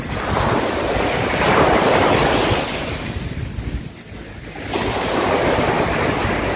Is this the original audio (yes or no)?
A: yes